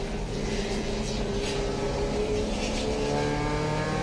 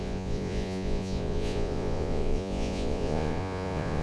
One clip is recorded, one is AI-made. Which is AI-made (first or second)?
second